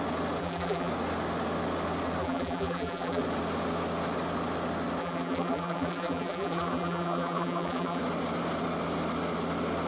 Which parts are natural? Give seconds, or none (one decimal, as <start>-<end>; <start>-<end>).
0.0-0.4; 0.9-2.2; 3.2-5.0; 8.0-9.9